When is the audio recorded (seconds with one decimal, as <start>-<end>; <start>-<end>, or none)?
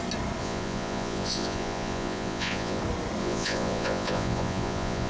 0.0-0.4; 2.8-3.2